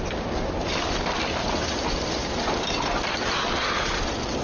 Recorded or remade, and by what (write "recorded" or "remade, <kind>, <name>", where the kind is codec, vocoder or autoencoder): recorded